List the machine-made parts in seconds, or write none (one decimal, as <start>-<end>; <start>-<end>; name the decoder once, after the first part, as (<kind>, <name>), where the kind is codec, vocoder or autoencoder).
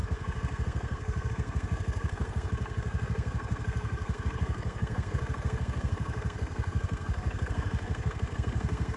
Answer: 0.0-9.0 (codec, SNAC)